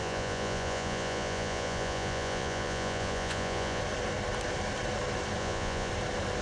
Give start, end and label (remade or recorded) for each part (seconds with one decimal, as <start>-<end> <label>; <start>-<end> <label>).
0.0-3.8 remade; 3.8-5.4 recorded; 5.4-5.9 remade; 5.9-6.4 recorded